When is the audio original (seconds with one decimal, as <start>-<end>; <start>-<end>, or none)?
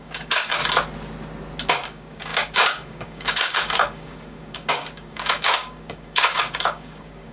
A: 0.6-1.7